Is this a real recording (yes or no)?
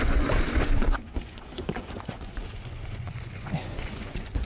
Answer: no